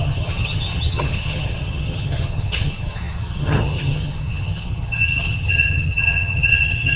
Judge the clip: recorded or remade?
remade